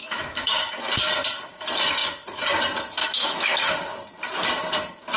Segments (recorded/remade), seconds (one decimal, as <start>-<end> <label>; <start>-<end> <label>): 0.0-0.7 remade; 0.7-3.0 recorded; 3.0-3.6 remade; 3.6-5.2 recorded